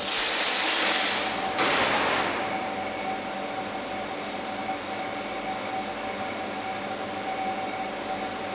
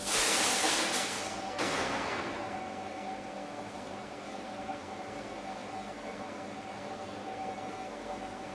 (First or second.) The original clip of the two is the first